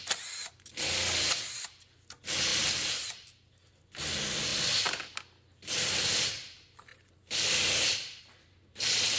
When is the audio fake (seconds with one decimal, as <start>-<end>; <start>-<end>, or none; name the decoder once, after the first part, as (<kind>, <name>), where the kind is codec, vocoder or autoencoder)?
2.5-3.3 (vocoder, BigVGAN v2)